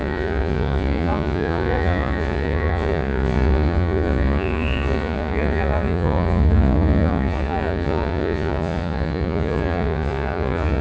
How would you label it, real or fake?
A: fake